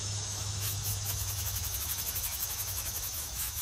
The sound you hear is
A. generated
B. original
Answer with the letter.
A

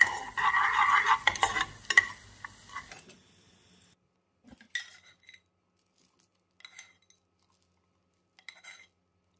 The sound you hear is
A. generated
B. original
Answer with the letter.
B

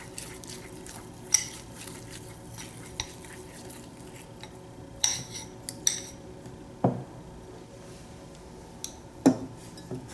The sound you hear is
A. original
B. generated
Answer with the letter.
A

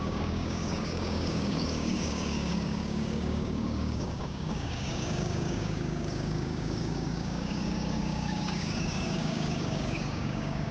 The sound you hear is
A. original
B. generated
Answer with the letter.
B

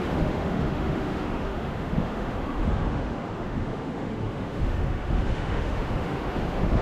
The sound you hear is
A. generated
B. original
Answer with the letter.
A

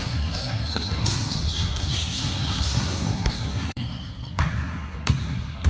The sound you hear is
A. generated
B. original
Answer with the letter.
A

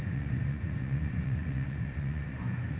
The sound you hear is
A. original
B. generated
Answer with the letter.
B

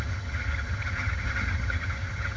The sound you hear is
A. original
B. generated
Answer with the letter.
B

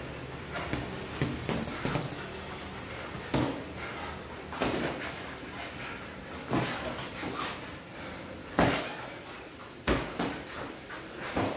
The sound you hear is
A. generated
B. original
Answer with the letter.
B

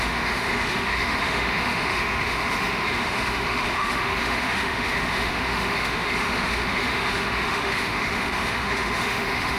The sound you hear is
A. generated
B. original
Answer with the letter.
A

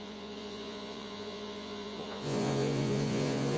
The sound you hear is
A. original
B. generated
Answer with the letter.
B